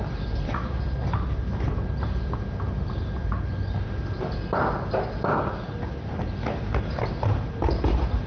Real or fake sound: real